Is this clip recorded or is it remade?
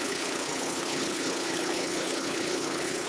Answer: remade